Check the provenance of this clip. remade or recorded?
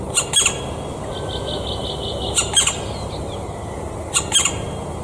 recorded